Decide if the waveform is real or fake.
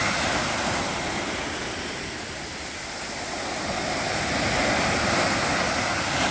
real